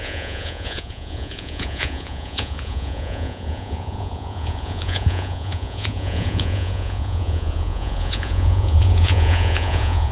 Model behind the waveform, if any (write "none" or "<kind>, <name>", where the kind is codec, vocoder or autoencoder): vocoder, Vocos